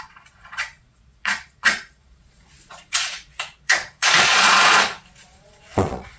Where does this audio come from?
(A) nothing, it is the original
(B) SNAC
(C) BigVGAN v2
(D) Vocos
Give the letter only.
D